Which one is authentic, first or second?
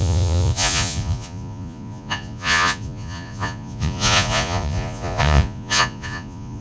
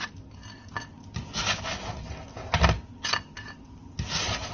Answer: second